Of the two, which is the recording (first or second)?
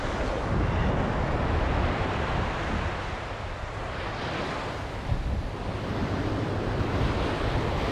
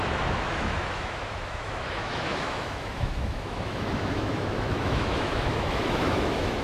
first